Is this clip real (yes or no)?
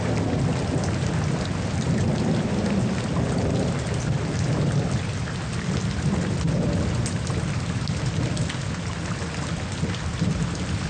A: yes